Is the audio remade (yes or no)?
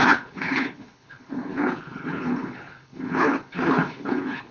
yes